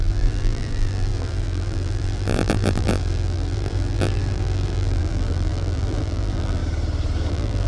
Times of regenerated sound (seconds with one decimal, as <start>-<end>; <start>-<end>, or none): 0.0-6.6; 7.3-7.7